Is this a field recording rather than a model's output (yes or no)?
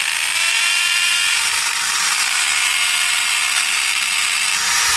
yes